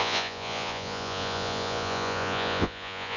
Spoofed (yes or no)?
yes